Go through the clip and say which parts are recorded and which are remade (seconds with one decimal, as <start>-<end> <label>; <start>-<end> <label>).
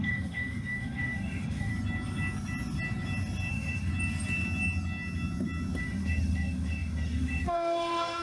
0.0-1.7 remade; 1.7-3.5 recorded; 3.5-3.9 remade; 3.9-5.8 recorded; 5.8-8.2 remade